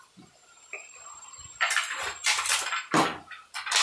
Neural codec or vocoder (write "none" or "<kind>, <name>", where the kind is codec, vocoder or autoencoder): none